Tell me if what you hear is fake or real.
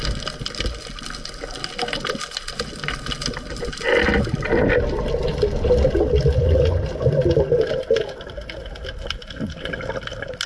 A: real